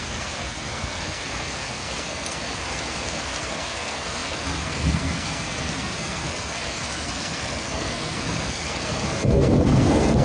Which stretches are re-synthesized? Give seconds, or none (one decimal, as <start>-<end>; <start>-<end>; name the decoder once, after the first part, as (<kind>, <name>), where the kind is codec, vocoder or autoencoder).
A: 0.0-10.2 (codec, SNAC)